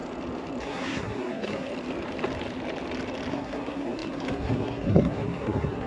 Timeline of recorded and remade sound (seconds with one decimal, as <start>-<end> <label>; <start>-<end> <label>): 0.0-0.6 recorded; 0.6-1.7 remade; 1.7-3.3 recorded; 3.3-5.9 remade